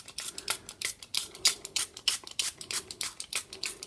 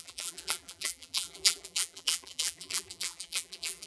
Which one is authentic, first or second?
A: first